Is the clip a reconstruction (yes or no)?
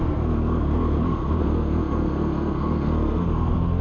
yes